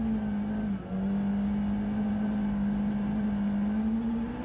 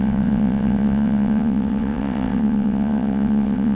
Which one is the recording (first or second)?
first